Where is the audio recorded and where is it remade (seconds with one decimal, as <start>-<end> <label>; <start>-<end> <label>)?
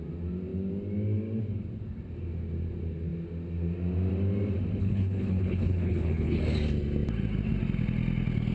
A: 0.0-4.8 recorded; 4.8-6.4 remade; 6.4-8.5 recorded